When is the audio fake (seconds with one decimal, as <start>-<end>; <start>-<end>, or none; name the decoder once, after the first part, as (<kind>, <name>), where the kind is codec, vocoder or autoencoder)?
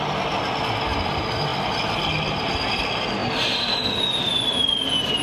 3.2-3.8 (vocoder, BigVGAN v2)